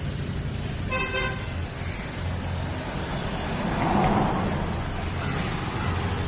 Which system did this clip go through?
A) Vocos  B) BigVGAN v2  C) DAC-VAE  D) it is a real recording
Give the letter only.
D